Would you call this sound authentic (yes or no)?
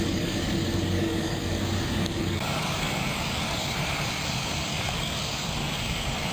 no